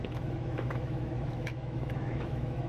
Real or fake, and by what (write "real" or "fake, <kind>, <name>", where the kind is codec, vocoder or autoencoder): fake, autoencoder, DAC-VAE